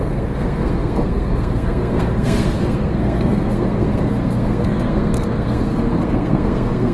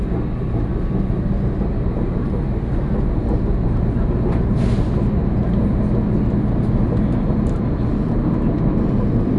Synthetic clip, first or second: first